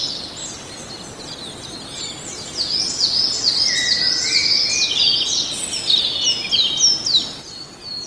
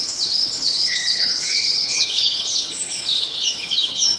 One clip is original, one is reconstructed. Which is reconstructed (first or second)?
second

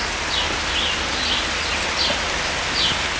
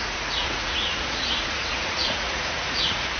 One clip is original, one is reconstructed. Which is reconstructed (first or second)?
second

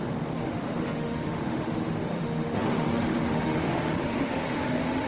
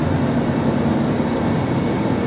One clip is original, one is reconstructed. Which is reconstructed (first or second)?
first